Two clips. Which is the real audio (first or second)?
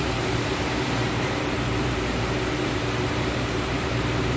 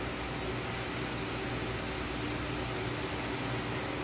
second